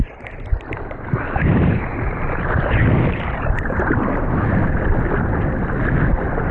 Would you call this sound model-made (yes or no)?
no